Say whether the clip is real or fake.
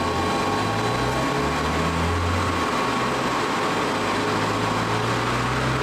real